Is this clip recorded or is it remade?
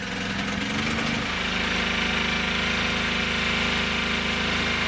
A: recorded